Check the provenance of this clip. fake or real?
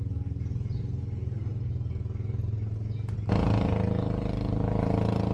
real